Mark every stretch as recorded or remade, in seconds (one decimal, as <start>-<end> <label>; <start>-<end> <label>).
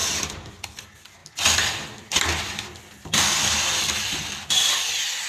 0.0-0.5 remade; 0.5-5.3 recorded